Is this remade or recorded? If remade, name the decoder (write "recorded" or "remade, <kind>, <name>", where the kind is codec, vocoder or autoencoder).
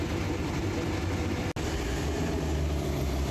recorded